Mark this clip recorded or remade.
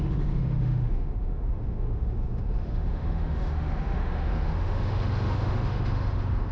remade